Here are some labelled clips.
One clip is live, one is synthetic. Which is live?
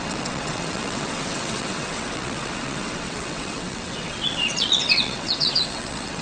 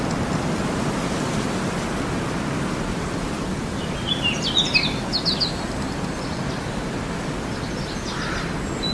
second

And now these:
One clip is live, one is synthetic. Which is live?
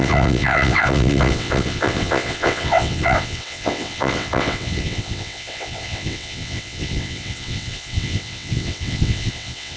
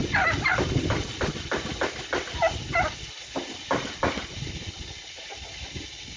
second